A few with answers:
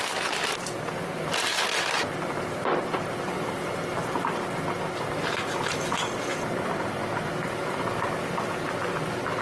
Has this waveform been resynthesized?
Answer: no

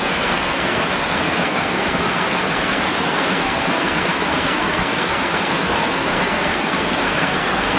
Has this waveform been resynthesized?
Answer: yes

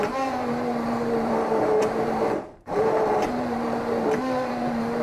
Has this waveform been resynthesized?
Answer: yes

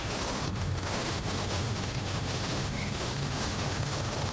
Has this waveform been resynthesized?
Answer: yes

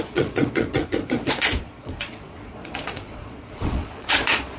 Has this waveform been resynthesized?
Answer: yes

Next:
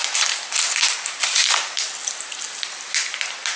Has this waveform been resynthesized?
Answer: no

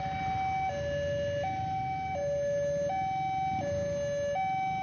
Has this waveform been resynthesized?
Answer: no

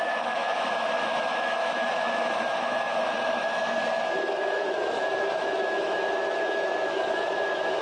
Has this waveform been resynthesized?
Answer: yes